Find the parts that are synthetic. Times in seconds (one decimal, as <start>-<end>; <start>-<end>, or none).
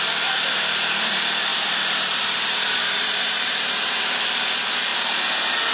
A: 1.5-3.7